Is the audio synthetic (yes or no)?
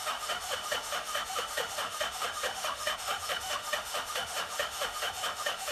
yes